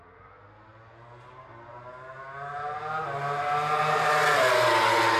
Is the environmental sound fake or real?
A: real